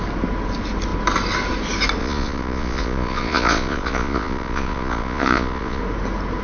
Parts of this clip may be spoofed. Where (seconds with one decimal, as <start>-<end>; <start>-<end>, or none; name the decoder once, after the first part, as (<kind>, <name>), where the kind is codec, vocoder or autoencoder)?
2.0-5.8 (vocoder, Vocos)